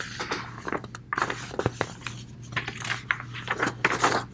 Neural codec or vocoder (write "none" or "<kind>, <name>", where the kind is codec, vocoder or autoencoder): none